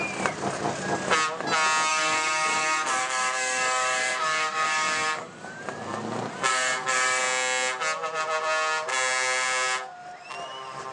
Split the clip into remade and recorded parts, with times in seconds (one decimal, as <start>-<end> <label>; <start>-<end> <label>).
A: 0.0-1.9 recorded; 1.9-5.6 remade; 5.6-6.5 recorded; 6.5-7.2 remade; 7.2-10.9 recorded